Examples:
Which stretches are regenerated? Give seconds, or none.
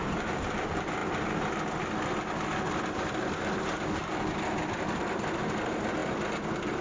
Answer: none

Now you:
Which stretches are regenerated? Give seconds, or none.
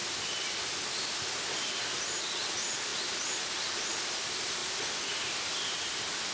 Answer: none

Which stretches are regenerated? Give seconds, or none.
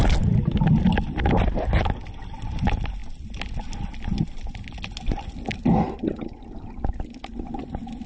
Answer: none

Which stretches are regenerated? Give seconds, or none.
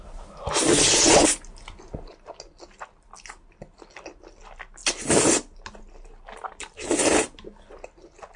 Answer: none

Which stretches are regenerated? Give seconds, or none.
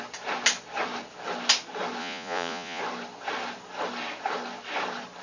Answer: 2.0-2.8 (vocoder, Vocos)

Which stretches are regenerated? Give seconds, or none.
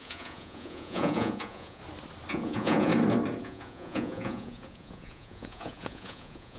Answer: 0.0-1.8 (vocoder, Vocos); 2.3-2.9; 3.4-6.6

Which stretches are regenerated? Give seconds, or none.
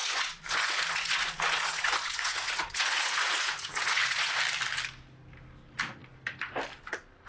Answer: 0.0-4.4 (vocoder, Vocos)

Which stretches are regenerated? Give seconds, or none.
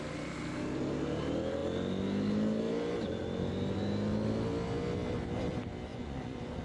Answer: 5.9-6.6 (vocoder, Vocos)